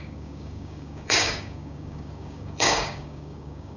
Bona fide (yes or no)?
no